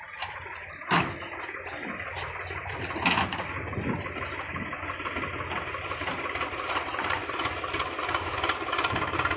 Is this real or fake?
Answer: real